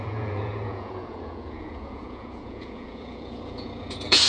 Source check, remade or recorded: remade